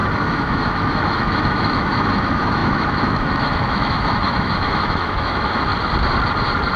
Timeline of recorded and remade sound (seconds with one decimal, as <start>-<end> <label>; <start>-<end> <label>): 0.0-5.7 remade; 5.7-6.8 recorded